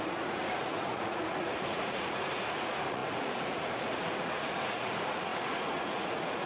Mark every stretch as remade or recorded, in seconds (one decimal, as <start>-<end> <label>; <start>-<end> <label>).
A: 0.0-6.5 remade

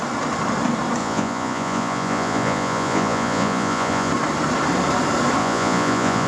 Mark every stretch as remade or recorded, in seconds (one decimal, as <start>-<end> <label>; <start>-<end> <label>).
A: 0.0-1.0 recorded; 1.0-4.1 remade; 4.1-5.4 recorded; 5.4-6.3 remade

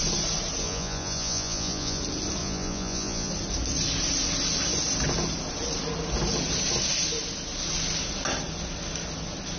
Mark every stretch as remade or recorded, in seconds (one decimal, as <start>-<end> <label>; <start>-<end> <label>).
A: 0.0-0.6 recorded; 0.6-2.0 remade; 2.0-2.4 recorded; 2.4-3.3 remade; 3.3-9.6 recorded

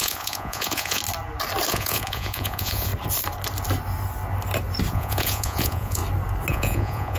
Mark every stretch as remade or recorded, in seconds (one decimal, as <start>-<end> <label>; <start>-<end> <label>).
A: 0.0-1.0 remade; 1.0-1.7 recorded; 1.7-2.9 remade; 2.9-4.9 recorded; 4.9-6.0 remade; 6.0-6.5 recorded; 6.5-7.2 remade